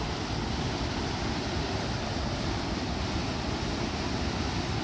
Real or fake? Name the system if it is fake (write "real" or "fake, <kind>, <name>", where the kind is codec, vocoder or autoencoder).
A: real